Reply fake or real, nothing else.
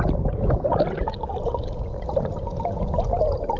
real